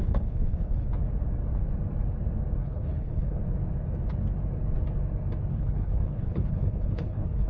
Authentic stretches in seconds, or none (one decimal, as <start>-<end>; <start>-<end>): 0.9-2.6; 3.4-5.5